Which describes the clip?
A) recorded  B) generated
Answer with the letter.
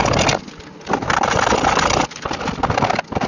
A